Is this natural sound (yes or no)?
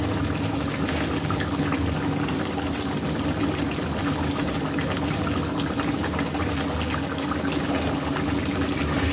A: yes